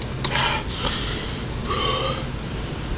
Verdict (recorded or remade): recorded